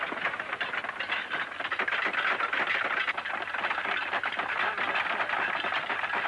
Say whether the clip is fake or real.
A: real